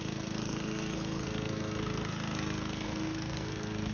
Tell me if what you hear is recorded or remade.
remade